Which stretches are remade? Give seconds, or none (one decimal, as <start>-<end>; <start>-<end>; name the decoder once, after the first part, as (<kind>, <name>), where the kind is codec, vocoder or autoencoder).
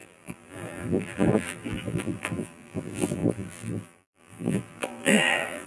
0.0-5.7 (vocoder, BigVGAN v2)